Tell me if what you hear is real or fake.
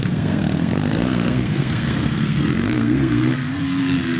fake